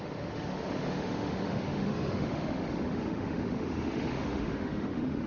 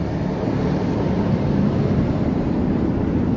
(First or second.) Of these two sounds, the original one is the second